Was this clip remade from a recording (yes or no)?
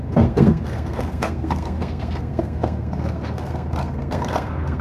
yes